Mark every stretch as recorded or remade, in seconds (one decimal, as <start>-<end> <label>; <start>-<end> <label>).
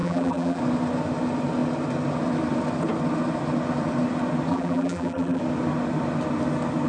0.0-0.6 remade; 0.6-4.5 recorded; 4.5-5.4 remade; 5.4-6.9 recorded